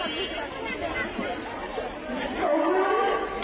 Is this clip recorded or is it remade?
recorded